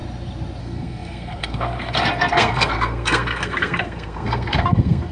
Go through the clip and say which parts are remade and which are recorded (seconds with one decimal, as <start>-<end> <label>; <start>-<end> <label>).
0.0-0.6 recorded; 0.6-5.1 remade